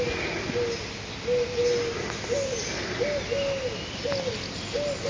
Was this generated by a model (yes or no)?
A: no